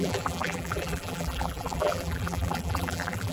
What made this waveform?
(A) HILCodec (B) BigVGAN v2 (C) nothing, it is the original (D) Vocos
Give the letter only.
B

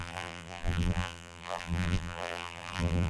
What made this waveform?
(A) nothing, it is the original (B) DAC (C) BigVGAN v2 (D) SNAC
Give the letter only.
C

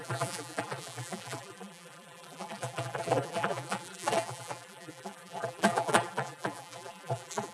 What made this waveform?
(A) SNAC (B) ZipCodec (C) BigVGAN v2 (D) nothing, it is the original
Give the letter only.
C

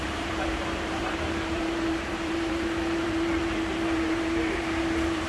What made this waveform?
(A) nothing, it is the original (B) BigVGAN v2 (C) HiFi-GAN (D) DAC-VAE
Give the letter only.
B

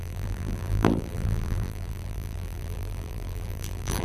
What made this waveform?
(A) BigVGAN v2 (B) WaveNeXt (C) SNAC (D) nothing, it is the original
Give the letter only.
A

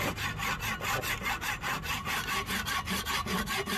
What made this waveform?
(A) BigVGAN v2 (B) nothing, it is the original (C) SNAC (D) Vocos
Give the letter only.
B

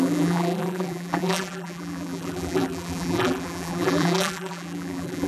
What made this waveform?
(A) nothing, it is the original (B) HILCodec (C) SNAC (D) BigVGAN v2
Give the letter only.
D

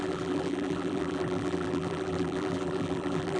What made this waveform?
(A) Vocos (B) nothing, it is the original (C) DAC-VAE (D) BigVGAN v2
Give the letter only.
D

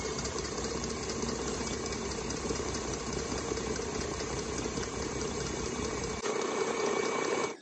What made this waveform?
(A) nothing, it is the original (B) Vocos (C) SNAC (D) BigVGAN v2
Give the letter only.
D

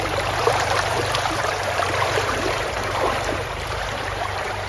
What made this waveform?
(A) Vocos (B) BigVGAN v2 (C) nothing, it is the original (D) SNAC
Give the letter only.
B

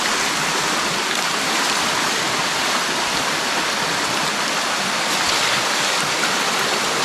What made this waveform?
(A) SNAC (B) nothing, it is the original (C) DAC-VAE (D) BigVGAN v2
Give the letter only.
B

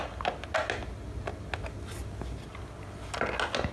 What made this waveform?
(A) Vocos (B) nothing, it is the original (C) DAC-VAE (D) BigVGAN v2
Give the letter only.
B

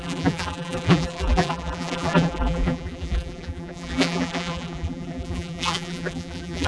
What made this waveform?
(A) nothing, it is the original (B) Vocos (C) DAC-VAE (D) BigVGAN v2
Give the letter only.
D